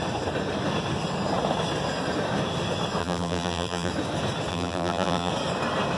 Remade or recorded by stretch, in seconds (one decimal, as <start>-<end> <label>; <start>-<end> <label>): 0.0-3.0 recorded; 3.0-3.9 remade; 3.9-4.5 recorded; 4.5-5.3 remade; 5.3-6.0 recorded